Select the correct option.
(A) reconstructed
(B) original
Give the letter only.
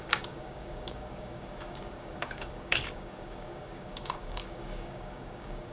A